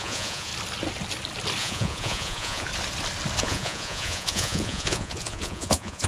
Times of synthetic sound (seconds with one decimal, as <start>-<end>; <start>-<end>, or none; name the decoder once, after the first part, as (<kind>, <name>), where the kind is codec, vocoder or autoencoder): 0.0-0.5 (vocoder, Vocos); 1.6-2.7; 3.4-6.1